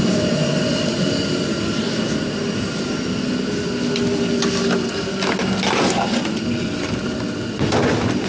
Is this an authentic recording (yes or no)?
yes